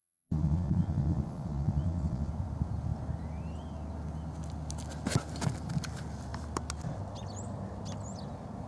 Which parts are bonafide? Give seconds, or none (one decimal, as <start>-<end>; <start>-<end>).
2.3-8.7